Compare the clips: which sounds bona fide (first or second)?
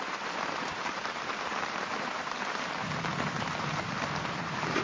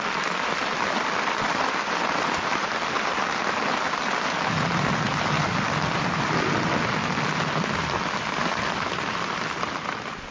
second